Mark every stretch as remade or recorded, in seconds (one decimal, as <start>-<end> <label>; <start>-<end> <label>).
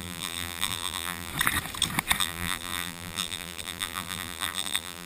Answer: 0.0-1.3 remade; 1.3-2.2 recorded; 2.2-5.1 remade